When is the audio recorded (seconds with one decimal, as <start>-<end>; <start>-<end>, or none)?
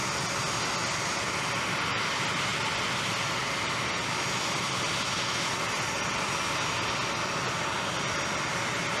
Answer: 0.0-9.0